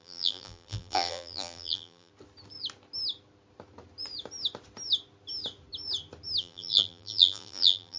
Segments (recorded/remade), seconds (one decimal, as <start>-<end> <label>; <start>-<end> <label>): 0.0-2.1 remade; 2.1-6.4 recorded; 6.4-8.0 remade